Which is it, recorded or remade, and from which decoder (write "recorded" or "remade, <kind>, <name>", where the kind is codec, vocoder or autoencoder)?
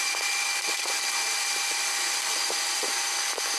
recorded